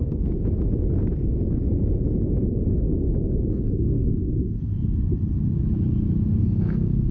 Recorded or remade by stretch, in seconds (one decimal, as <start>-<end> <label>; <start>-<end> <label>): 0.0-0.4 remade; 0.4-3.6 recorded; 3.6-4.7 remade; 4.7-6.4 recorded; 6.4-7.1 remade